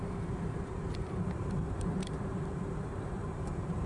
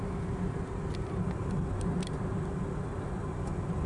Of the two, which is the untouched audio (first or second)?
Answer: second